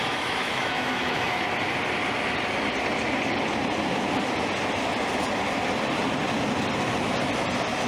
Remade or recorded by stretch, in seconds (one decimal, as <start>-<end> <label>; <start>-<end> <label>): 0.0-1.4 remade; 1.4-7.9 recorded